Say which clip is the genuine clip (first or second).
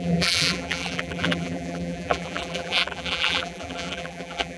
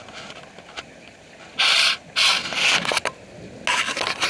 second